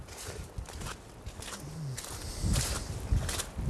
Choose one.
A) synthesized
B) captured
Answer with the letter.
B